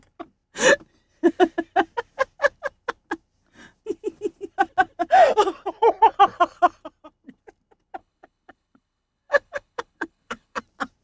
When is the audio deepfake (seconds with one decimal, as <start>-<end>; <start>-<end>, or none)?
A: 8.0-10.6